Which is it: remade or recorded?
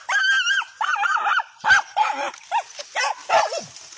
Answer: recorded